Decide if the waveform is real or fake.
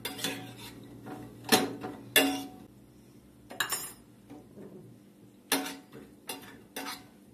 real